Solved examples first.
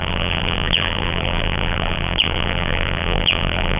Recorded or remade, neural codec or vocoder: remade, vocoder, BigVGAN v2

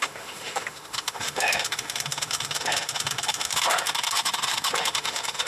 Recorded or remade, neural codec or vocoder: remade, autoencoder, DAC-VAE